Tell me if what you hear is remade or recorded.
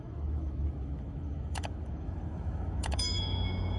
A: remade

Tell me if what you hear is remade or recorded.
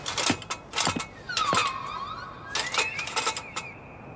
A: recorded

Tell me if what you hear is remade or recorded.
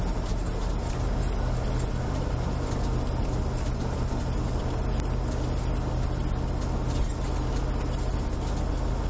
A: recorded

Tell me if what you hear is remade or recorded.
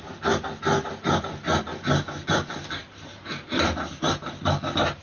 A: recorded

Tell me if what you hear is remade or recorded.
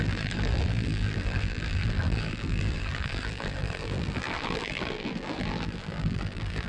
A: remade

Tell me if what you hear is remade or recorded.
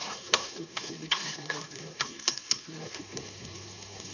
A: remade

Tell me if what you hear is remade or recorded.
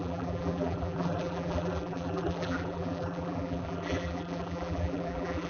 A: remade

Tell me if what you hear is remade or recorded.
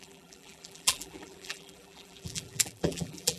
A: remade